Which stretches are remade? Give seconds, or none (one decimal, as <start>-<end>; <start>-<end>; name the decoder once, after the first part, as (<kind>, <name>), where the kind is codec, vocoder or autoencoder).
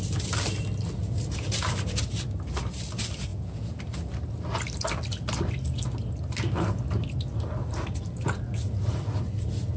3.3-3.8 (vocoder, Vocos)